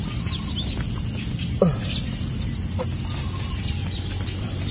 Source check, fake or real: real